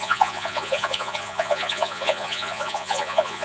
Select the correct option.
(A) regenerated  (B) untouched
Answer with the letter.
A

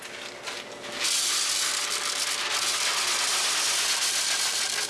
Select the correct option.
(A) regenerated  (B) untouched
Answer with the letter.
B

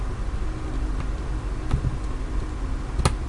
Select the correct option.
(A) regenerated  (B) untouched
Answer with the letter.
B